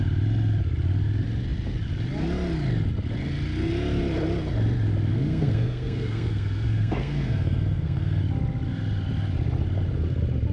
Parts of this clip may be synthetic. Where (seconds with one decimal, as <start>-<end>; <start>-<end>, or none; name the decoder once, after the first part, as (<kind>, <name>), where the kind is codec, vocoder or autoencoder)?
5.1-8.2 (codec, SNAC)